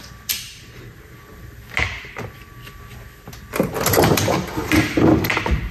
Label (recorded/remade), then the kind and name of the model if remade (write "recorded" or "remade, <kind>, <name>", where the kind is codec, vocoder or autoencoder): recorded